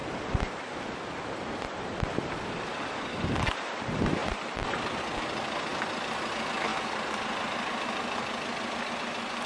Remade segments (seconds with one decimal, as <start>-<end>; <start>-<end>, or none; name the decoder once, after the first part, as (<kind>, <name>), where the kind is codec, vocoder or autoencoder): 0.0-0.7 (vocoder, BigVGAN v2); 4.2-5.0